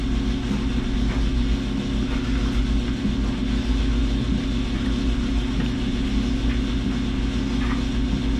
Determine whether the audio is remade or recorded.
recorded